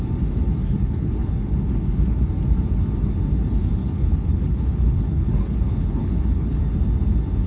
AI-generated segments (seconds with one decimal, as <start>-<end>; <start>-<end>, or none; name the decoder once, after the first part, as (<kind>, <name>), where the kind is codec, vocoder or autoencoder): 0.6-2.2 (codec, HILCodec); 3.8-6.6